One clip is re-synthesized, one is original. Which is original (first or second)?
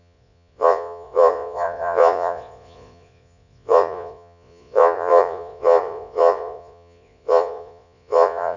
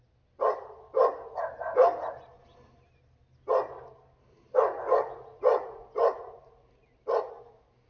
second